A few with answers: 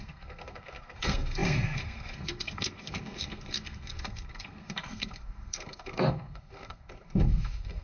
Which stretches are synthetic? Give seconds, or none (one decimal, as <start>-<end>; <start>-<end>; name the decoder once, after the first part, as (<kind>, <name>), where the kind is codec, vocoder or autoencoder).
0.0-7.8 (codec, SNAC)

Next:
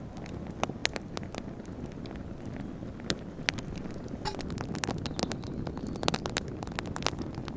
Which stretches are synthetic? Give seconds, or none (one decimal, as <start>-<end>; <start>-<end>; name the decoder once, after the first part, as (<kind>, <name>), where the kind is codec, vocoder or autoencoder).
none

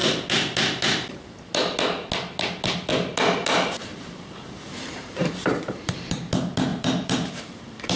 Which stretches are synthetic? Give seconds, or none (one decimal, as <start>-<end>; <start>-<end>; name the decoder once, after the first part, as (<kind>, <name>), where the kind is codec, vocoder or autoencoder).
3.9-6.3 (vocoder, BigVGAN v2); 6.7-8.0